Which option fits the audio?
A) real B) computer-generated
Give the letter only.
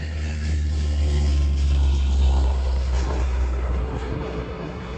B